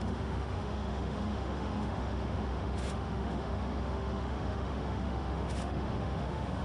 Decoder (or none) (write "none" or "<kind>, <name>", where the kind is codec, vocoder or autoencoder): autoencoder, DAC-VAE